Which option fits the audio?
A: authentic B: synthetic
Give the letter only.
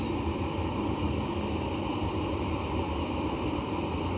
A